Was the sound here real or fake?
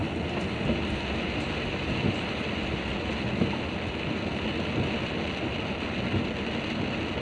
real